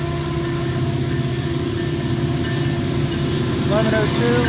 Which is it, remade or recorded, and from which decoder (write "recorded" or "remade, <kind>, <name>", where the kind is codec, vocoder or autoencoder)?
recorded